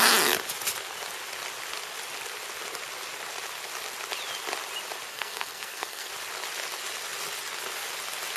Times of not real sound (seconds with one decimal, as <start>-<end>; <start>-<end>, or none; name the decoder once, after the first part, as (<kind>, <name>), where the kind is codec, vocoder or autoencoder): 5.1-6.1 (codec, SNAC)